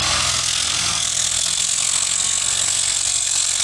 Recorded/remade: remade